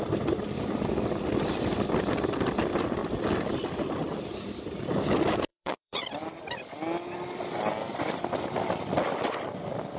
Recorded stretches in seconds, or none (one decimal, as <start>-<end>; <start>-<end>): 0.0-5.5; 6.0-10.0